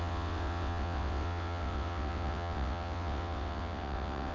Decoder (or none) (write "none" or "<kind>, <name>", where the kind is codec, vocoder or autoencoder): vocoder, WaveNeXt